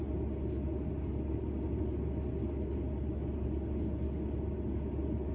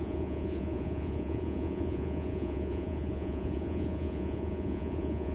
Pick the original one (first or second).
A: first